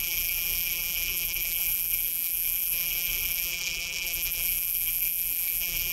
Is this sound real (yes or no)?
no